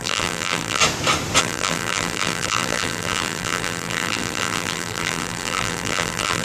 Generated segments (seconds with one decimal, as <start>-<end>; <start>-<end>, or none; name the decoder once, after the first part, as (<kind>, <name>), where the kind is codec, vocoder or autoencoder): 0.0-0.8 (vocoder, BigVGAN v2); 1.4-6.4